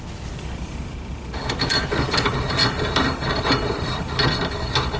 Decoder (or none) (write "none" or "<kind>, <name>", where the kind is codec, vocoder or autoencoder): none